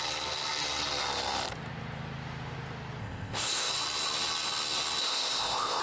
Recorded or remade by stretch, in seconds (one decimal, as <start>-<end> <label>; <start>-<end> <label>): 0.0-3.0 recorded; 3.0-3.7 remade; 3.7-5.0 recorded; 5.0-5.8 remade